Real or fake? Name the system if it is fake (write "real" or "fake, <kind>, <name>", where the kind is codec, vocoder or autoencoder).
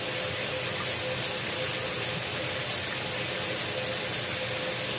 real